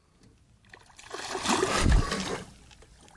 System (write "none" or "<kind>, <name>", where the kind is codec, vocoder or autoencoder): none